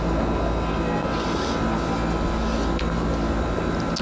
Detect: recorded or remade recorded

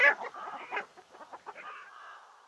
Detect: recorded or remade recorded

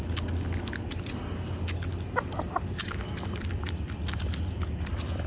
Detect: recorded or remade recorded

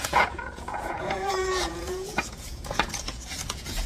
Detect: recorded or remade remade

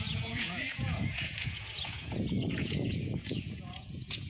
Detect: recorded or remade remade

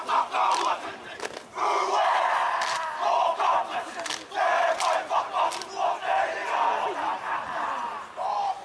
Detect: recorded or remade recorded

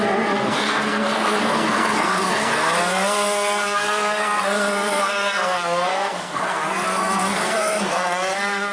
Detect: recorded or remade remade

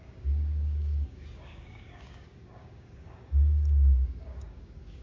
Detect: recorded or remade remade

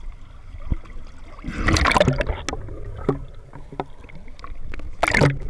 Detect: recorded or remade recorded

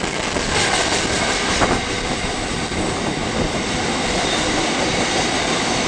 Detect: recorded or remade recorded